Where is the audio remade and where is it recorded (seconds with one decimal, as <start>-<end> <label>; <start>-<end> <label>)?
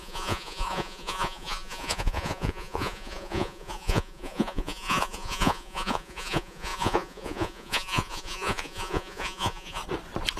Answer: 0.0-9.8 remade; 9.8-10.4 recorded